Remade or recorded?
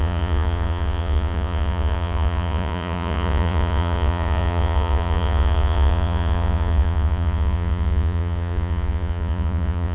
remade